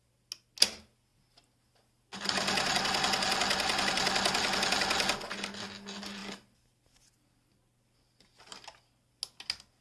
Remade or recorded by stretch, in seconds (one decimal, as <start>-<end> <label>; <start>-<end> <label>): 0.0-9.8 recorded